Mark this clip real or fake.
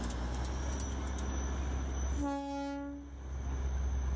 real